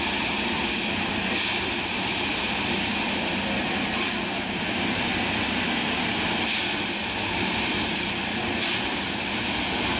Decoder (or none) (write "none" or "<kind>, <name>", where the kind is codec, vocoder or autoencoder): vocoder, BigVGAN v2